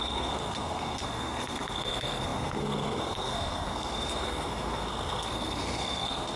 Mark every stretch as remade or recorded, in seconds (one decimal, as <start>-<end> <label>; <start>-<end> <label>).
0.0-6.4 remade